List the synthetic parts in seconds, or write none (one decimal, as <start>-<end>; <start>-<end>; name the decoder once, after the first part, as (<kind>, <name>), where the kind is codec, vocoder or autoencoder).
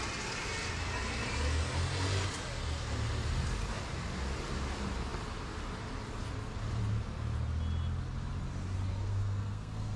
9.0-10.0 (codec, SNAC)